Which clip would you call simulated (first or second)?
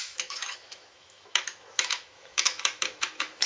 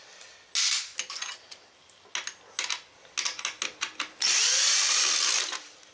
first